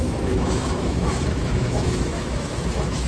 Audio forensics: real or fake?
fake